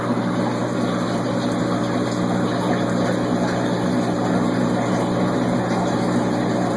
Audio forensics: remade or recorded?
recorded